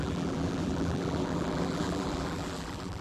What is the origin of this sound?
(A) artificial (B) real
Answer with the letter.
A